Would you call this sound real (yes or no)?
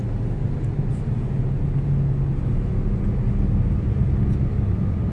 yes